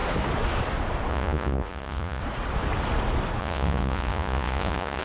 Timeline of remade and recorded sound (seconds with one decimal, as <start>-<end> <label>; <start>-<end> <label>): 0.0-1.1 recorded; 1.1-2.2 remade; 2.2-3.4 recorded; 3.4-5.0 remade